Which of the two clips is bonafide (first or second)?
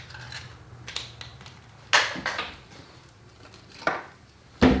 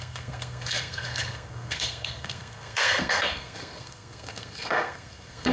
first